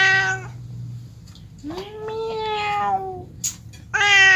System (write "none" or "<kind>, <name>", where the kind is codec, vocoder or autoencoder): none